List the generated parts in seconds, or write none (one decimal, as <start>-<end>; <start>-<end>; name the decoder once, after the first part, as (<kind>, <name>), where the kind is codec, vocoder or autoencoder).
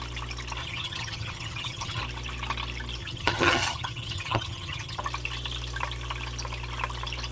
0.6-2.0 (vocoder, HiFi-GAN); 3.0-5.0